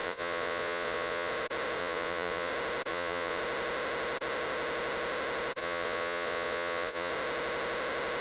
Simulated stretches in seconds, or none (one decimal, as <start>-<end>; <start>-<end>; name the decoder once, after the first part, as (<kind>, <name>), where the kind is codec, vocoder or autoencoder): 0.0-1.3 (vocoder, Vocos); 1.8-2.5; 2.9-3.4; 5.6-7.1